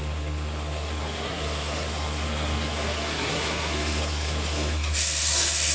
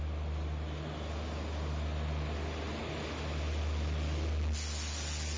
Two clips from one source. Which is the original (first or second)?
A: second